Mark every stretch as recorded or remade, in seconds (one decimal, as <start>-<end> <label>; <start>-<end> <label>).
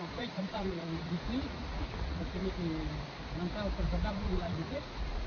0.0-2.4 remade; 2.4-4.1 recorded; 4.1-5.3 remade